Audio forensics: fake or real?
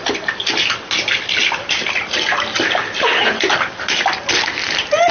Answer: real